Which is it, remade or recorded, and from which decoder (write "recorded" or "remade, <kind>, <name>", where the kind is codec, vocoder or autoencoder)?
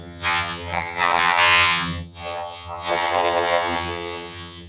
remade, vocoder, HiFi-GAN